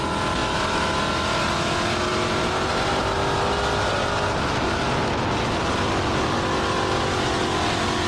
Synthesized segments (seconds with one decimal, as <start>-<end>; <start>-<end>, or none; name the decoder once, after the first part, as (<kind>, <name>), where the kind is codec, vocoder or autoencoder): 0.4-0.9 (vocoder, BigVGAN v2); 2.1-3.0